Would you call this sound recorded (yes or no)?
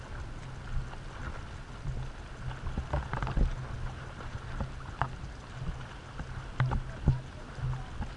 yes